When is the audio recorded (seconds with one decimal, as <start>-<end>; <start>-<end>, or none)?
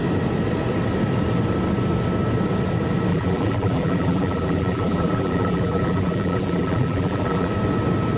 0.0-3.1; 7.5-8.2